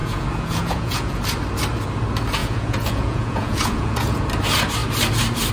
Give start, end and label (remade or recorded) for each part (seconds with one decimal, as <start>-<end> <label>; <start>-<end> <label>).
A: 0.0-1.2 remade; 1.2-2.4 recorded; 2.4-4.2 remade; 4.2-5.5 recorded